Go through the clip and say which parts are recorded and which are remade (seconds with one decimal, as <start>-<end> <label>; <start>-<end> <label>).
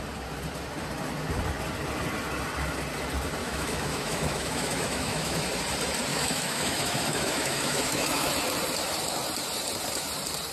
0.0-3.4 recorded; 3.4-5.4 remade; 5.4-6.1 recorded; 6.1-8.3 remade; 8.3-10.5 recorded